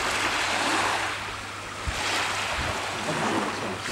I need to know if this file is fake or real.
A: real